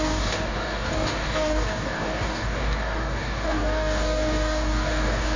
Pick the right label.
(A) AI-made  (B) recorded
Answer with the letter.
A